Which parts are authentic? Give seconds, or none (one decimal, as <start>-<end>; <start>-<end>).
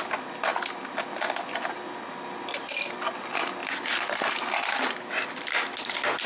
0.0-6.3